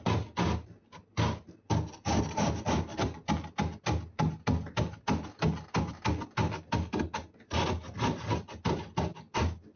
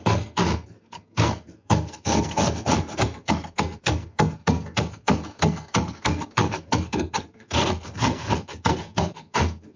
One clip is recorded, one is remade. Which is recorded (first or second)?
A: first